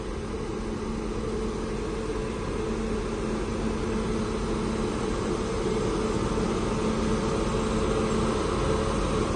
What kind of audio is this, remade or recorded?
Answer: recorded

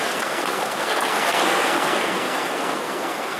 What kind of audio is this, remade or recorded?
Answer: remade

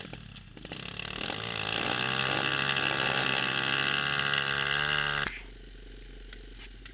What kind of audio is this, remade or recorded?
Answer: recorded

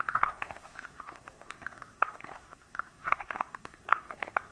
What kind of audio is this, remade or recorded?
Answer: remade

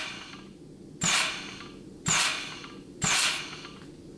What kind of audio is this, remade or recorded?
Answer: recorded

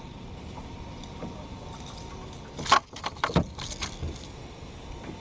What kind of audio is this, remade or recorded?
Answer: recorded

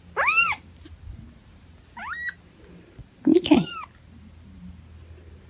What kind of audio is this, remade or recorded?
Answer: recorded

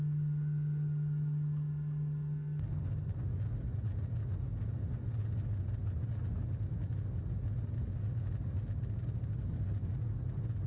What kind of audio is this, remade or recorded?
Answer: recorded